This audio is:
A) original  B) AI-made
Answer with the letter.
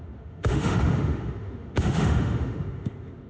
B